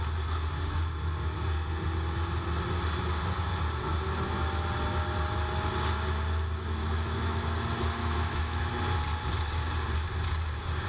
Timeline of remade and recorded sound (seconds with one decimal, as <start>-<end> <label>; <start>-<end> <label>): 0.0-6.8 recorded; 6.8-7.4 remade; 7.4-8.0 recorded; 8.0-8.6 remade; 8.6-10.9 recorded